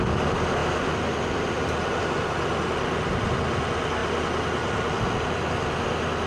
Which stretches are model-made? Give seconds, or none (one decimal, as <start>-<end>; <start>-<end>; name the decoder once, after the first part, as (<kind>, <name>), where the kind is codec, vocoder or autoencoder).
none